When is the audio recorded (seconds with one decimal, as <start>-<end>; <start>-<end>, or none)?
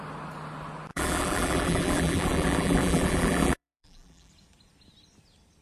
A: 0.0-0.9; 4.3-5.6